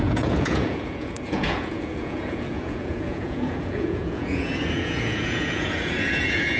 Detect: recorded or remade remade